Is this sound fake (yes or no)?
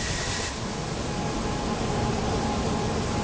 no